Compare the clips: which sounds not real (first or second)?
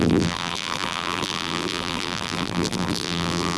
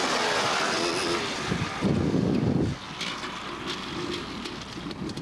first